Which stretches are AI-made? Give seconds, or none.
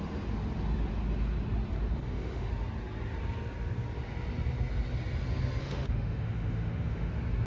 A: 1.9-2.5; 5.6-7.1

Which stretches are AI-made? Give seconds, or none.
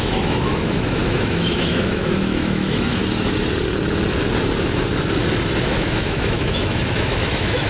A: 0.0-3.0; 5.6-7.7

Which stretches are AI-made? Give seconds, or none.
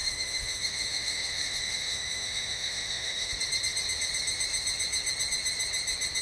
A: 0.0-3.3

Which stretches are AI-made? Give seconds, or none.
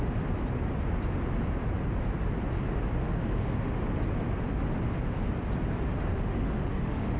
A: 3.0-3.7; 6.1-7.2